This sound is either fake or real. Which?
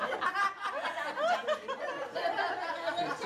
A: real